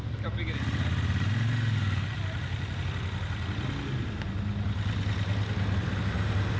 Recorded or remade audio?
recorded